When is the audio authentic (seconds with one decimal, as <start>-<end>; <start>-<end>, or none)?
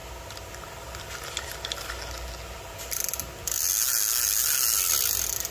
0.0-5.5